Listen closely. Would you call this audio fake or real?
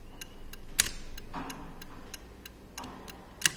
real